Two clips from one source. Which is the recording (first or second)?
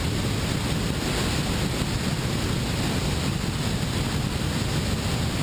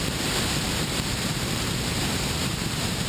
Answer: first